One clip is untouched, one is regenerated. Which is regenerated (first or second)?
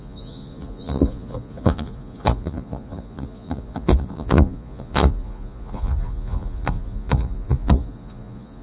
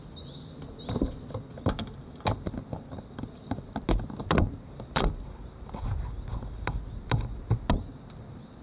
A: first